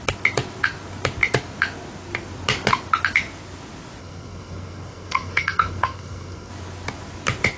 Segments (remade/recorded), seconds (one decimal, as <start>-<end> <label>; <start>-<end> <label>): 0.0-4.0 recorded; 4.0-6.5 remade; 6.5-7.6 recorded